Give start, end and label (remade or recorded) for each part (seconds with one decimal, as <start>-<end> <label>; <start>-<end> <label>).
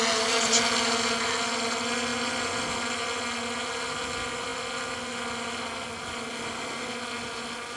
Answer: 0.0-7.8 recorded